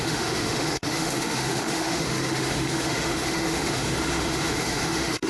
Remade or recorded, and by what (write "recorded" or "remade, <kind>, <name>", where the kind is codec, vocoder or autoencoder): remade, autoencoder, DAC-VAE